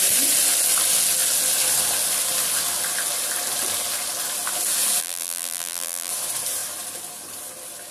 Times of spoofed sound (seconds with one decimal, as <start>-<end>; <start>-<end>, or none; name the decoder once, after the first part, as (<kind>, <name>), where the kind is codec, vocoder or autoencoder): 5.0-6.1 (vocoder, BigVGAN v2)